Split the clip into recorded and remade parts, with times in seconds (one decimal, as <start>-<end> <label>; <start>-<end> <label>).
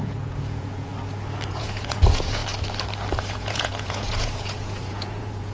0.0-0.9 remade; 0.9-1.5 recorded; 1.5-2.4 remade; 2.4-3.2 recorded; 3.2-5.5 remade